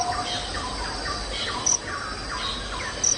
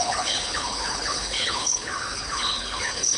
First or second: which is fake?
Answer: second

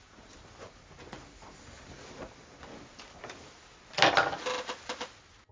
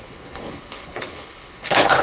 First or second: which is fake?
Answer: second